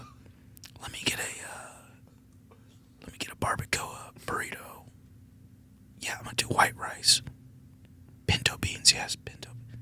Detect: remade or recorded recorded